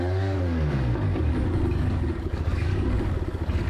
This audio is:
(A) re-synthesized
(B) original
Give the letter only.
A